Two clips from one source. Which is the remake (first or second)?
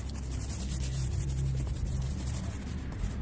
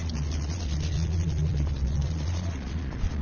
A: second